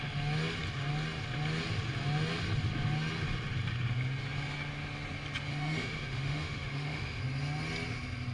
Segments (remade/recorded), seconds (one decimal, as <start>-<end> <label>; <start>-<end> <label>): 0.0-5.5 recorded; 5.5-7.2 remade; 7.2-8.3 recorded